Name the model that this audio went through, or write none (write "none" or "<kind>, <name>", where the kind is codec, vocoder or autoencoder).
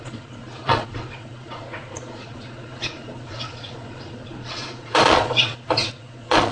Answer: vocoder, Vocos